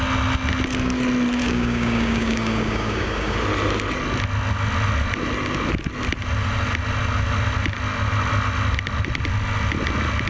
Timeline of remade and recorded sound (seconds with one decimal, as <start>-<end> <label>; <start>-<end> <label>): 0.0-1.4 recorded; 1.4-3.4 remade; 3.4-10.3 recorded